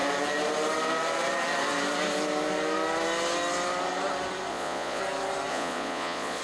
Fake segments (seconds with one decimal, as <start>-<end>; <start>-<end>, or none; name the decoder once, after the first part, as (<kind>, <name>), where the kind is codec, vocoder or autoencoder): 4.5-5.0 (vocoder, Vocos); 5.5-6.4